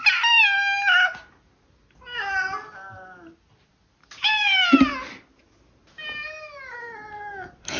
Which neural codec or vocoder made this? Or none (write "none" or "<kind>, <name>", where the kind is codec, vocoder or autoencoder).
none